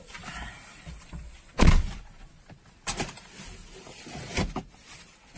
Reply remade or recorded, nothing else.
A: recorded